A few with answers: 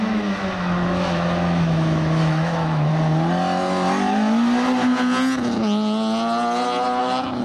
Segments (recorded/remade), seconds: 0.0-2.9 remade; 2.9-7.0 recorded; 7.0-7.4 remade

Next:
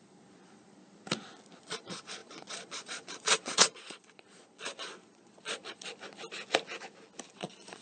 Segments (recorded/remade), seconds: 0.0-0.8 remade; 0.8-1.6 recorded; 1.6-5.9 remade; 5.9-7.3 recorded; 7.3-7.8 remade

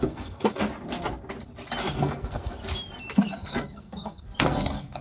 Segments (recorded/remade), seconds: 0.0-0.6 remade; 0.6-1.8 recorded; 1.8-2.6 remade; 2.6-3.1 recorded; 3.1-5.0 remade

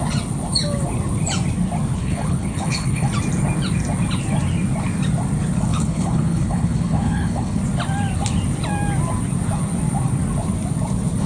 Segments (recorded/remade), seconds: 0.0-2.0 recorded; 2.0-3.1 remade; 3.1-5.7 recorded; 5.7-7.6 remade; 7.6-11.3 recorded